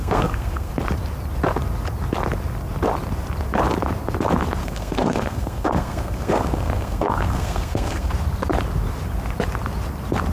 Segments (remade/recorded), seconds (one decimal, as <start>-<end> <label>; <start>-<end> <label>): 0.0-0.7 remade; 0.7-4.6 recorded; 4.6-8.1 remade; 8.1-10.3 recorded